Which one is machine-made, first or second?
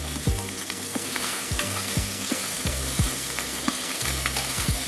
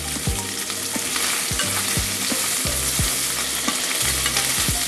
first